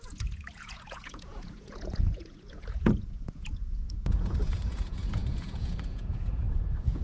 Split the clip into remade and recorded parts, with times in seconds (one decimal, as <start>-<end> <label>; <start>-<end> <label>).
0.0-7.0 remade